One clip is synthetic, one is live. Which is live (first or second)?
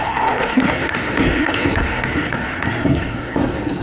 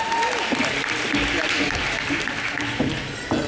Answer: second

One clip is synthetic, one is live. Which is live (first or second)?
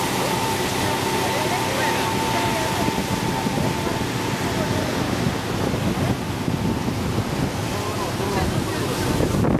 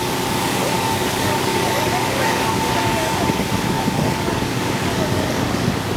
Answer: first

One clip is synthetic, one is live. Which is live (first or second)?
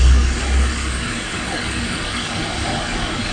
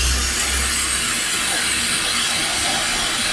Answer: second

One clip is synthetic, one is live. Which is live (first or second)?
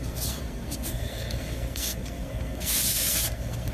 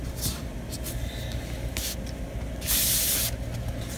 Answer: second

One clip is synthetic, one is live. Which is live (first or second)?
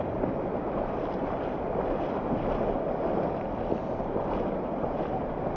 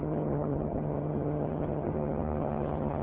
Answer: first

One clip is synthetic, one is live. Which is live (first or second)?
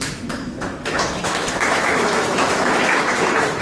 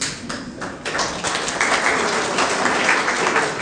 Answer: second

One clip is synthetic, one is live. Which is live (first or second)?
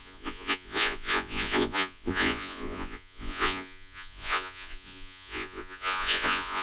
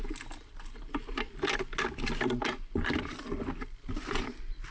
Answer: second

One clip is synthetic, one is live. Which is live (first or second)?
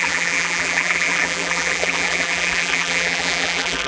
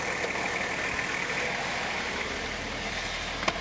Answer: second